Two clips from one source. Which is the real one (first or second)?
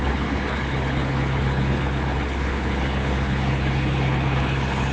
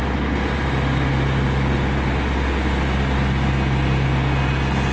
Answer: second